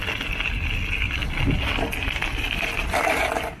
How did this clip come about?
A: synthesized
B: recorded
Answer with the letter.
B